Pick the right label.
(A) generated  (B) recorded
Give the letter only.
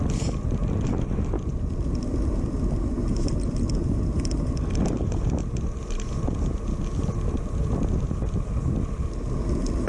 B